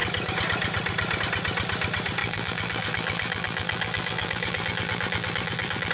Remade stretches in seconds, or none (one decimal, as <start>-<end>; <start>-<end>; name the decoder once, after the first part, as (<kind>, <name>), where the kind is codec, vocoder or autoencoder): 2.2-5.9 (vocoder, BigVGAN v2)